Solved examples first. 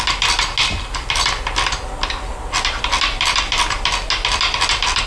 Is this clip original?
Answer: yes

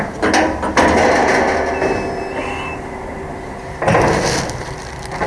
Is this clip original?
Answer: yes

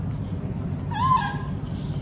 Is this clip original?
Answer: yes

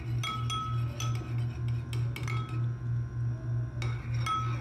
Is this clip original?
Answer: yes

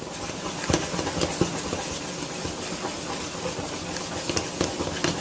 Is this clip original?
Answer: yes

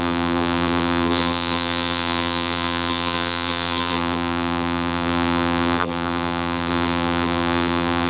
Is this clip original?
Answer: no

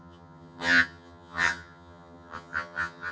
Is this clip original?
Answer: no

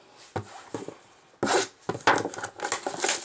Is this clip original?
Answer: yes